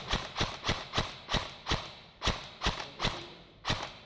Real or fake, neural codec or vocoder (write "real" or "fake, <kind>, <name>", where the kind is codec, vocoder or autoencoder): real